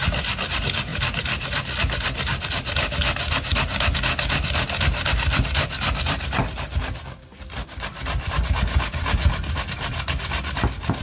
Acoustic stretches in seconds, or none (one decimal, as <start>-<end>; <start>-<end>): 0.0-11.0